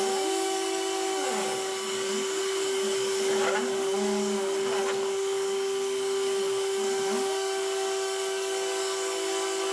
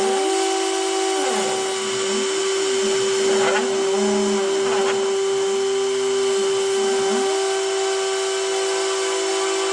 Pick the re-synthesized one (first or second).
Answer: first